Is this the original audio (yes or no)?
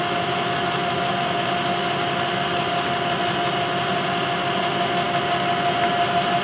yes